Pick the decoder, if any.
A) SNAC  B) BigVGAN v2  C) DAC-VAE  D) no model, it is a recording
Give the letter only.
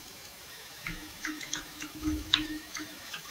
C